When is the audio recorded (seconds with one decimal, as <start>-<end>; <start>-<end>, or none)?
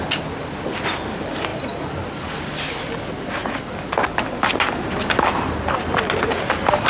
0.0-6.9